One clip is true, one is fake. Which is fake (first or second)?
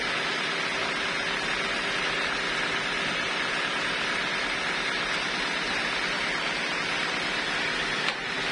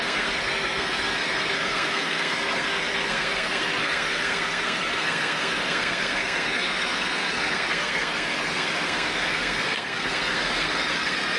second